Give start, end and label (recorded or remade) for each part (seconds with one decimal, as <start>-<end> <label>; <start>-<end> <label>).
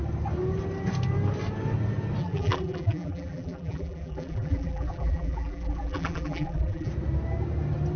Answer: 0.0-2.2 recorded; 2.2-6.9 remade; 6.9-8.0 recorded